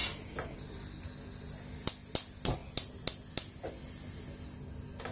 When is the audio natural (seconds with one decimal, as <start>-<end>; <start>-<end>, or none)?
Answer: 0.0-5.1